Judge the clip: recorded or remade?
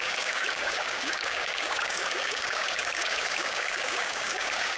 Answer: remade